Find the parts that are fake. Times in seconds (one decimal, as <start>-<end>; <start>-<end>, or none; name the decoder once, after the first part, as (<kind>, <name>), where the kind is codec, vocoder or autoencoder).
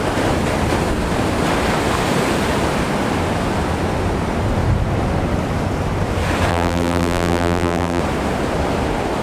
6.5-8.0 (vocoder, BigVGAN v2)